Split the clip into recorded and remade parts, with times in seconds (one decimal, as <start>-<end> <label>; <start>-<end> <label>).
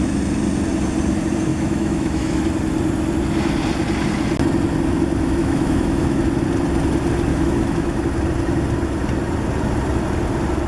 0.0-1.5 recorded; 1.5-2.4 remade; 2.4-5.4 recorded; 5.4-6.2 remade; 6.2-7.3 recorded; 7.3-8.0 remade; 8.0-10.7 recorded